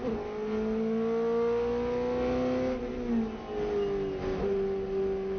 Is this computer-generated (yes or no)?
no